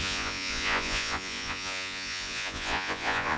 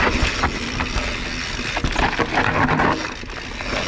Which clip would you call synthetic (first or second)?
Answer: first